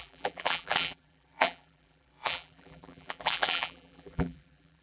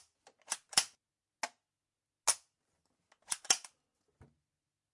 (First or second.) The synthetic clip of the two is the first